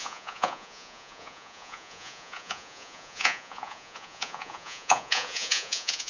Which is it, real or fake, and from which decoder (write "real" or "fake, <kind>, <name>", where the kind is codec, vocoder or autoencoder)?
fake, vocoder, Vocos